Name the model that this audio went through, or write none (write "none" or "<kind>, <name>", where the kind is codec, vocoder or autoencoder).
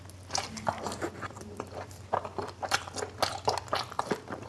none